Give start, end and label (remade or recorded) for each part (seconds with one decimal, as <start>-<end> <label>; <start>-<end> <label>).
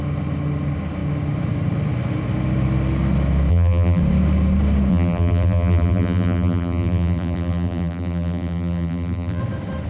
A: 0.0-3.5 recorded; 3.5-4.0 remade; 4.0-4.9 recorded; 4.9-9.4 remade; 9.4-9.9 recorded